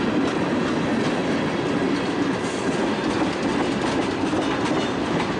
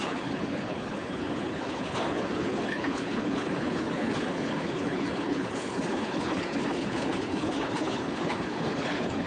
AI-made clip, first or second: second